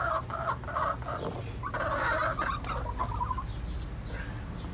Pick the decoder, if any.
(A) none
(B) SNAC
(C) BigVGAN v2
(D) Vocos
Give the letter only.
A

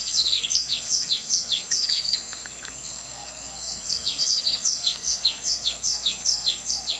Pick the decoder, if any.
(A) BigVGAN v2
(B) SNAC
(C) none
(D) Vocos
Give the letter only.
B